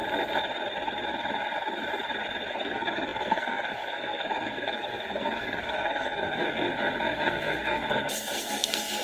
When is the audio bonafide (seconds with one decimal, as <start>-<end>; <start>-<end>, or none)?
0.0-2.5